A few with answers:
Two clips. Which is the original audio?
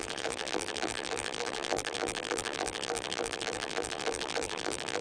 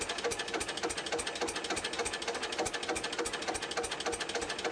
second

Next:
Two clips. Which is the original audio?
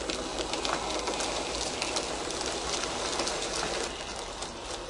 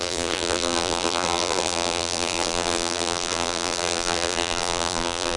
first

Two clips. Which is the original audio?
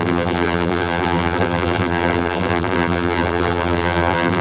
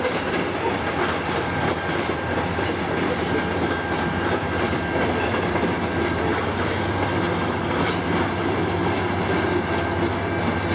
second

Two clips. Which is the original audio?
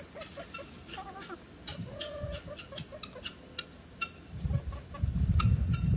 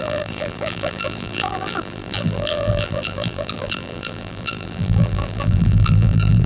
first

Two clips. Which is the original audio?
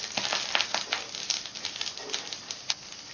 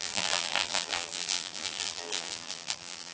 first